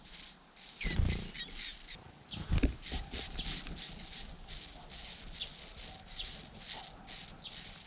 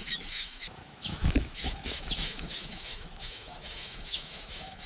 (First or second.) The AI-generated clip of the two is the second